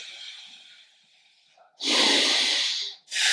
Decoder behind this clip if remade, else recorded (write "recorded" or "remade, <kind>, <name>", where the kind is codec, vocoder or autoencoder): recorded